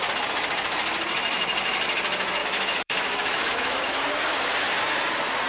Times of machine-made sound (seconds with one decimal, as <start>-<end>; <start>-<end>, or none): 2.4-3.8